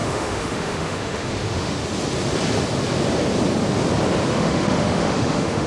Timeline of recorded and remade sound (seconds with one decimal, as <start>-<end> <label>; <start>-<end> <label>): 0.0-1.8 remade; 1.8-4.3 recorded; 4.3-5.7 remade